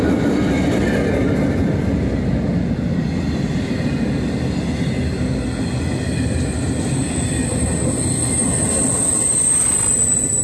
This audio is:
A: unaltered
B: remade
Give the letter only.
A